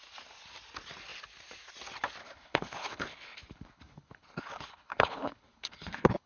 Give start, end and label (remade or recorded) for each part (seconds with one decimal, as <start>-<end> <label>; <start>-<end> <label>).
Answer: 0.0-2.2 recorded; 2.2-6.3 remade